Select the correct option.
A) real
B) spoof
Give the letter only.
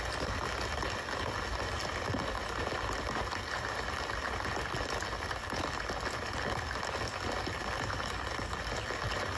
A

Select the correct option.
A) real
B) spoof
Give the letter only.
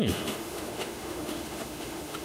B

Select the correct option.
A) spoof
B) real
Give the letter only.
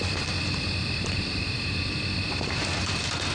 B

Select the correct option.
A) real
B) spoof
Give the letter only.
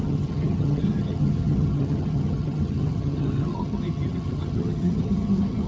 B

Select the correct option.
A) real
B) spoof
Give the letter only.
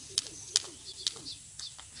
A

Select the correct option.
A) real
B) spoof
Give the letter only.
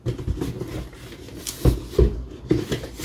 A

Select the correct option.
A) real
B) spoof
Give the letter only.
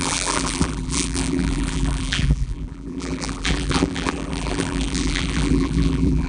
B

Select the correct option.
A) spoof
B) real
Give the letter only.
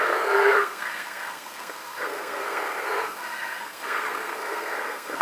A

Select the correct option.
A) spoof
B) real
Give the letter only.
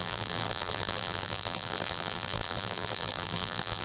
A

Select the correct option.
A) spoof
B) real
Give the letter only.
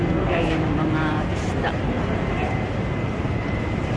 A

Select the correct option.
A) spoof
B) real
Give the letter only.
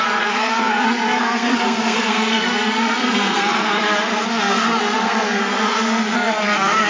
A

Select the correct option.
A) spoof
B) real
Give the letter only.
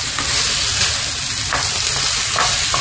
B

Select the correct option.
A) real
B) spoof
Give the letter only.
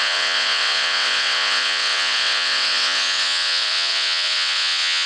B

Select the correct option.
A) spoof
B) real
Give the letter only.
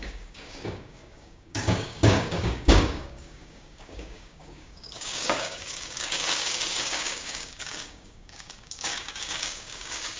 A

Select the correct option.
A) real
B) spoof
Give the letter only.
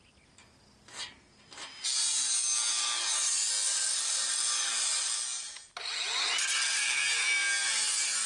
A